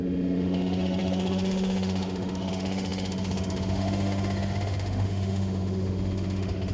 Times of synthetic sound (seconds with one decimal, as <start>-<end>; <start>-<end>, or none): 0.0-6.7